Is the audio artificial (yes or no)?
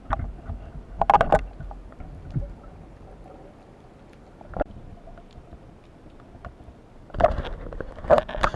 no